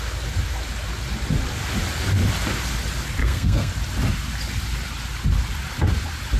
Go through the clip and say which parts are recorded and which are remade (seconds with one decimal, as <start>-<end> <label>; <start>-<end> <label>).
0.0-3.2 recorded; 3.2-3.7 remade; 3.7-6.4 recorded